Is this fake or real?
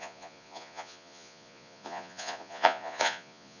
fake